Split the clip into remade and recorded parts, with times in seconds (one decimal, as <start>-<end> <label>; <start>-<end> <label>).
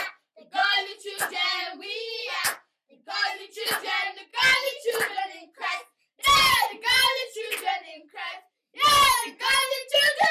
0.0-10.3 recorded